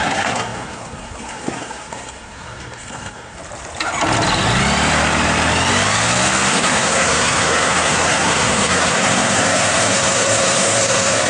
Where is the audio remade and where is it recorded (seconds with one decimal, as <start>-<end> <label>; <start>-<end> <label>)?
0.0-3.4 remade; 3.4-6.5 recorded; 6.5-11.3 remade